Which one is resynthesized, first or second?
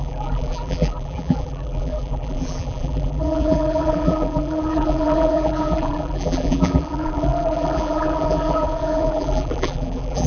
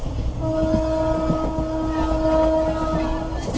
first